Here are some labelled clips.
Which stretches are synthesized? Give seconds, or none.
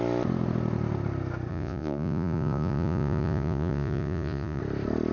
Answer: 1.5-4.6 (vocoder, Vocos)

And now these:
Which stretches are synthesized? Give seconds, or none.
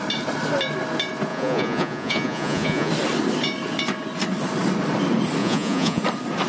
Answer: 1.3-2.9 (vocoder, Vocos); 5.4-6.0